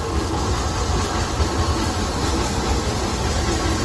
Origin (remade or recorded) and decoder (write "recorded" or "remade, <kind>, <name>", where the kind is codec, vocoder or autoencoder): recorded